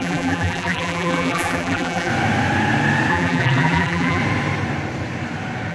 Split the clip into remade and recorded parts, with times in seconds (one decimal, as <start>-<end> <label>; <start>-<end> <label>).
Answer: 0.0-2.1 remade; 2.1-3.1 recorded; 3.1-4.2 remade; 4.2-5.7 recorded